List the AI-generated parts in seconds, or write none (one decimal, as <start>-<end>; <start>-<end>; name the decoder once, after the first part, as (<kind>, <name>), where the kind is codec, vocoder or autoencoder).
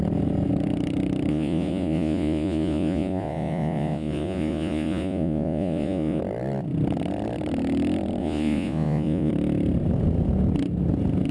1.3-6.2 (vocoder, Vocos); 8.2-9.3